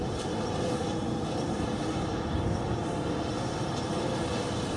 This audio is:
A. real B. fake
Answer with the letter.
B